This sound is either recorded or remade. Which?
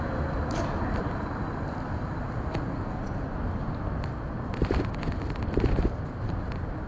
remade